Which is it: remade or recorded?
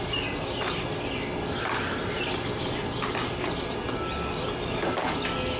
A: recorded